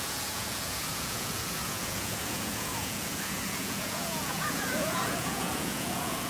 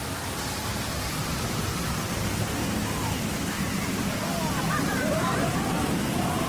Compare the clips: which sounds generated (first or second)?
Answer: first